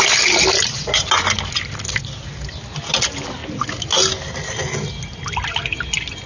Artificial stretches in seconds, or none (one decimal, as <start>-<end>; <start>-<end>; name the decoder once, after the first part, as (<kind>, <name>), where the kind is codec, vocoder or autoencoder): none